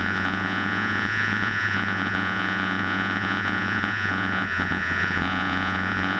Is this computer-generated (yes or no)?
yes